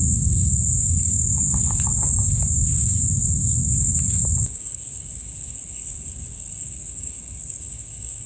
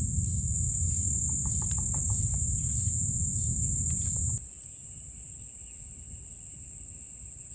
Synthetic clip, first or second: first